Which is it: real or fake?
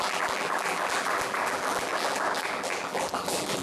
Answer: fake